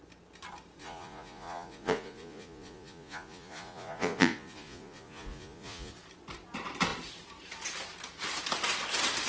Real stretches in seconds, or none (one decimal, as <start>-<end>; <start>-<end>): 0.0-0.8; 5.9-9.3